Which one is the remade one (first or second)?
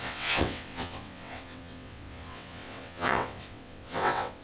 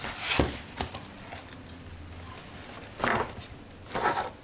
first